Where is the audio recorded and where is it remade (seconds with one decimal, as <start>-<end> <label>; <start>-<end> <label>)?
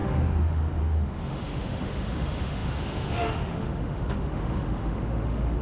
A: 0.0-5.6 remade